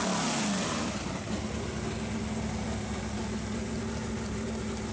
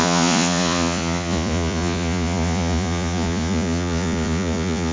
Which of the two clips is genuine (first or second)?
first